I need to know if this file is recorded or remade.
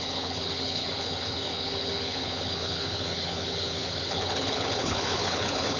remade